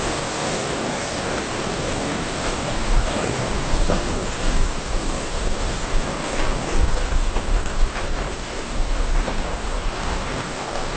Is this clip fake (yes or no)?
yes